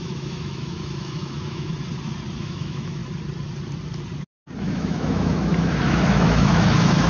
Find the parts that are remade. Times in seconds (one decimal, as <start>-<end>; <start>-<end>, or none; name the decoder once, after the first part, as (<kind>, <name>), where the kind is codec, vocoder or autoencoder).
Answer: 0.0-1.7 (autoencoder, DAC-VAE); 2.4-3.0; 4.6-7.1